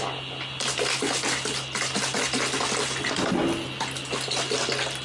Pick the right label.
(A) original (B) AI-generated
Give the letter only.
A